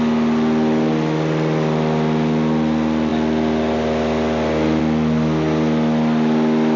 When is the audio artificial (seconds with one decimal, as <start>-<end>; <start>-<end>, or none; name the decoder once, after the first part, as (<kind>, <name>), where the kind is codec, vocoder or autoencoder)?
none